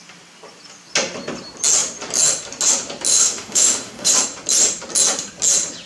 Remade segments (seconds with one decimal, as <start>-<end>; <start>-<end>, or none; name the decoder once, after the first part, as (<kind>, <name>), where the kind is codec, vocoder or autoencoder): 3.1-4.1 (autoencoder, DAC-VAE)

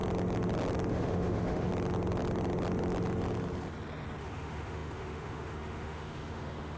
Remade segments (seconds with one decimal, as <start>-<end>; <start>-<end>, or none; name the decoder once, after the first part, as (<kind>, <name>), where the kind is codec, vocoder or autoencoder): 0.9-1.7 (autoencoder, DAC-VAE); 4.2-6.8

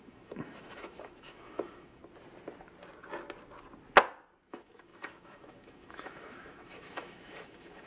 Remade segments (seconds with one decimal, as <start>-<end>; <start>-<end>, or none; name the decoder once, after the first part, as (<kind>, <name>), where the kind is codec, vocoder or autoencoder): 0.0-2.0 (autoencoder, DAC-VAE); 4.5-7.9

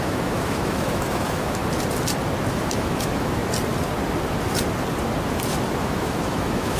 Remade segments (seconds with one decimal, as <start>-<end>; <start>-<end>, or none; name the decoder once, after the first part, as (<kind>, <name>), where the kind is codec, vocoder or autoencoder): 0.0-1.6 (autoencoder, DAC-VAE); 2.5-3.4; 5.8-6.8

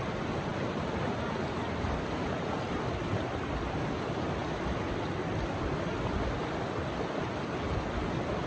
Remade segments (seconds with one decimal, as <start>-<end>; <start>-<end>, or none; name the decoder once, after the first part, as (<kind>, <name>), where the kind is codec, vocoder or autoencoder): none

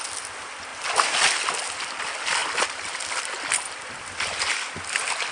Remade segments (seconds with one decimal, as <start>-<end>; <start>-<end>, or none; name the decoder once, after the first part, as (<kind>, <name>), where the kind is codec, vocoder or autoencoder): none

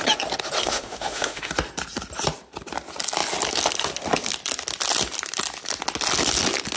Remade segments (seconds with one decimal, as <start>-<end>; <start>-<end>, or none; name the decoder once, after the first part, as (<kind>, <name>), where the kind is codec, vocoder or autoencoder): 0.6-1.5 (autoencoder, DAC-VAE)